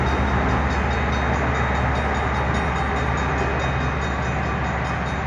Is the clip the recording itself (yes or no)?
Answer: yes